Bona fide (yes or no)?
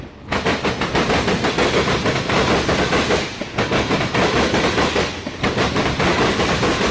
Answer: no